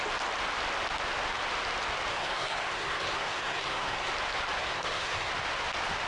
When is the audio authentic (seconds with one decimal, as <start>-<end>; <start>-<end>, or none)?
0.0-2.1; 4.1-4.6; 5.3-6.1